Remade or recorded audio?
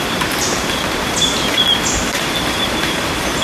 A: remade